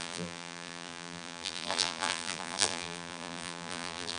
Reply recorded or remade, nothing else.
remade